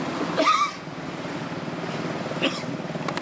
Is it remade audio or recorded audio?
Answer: recorded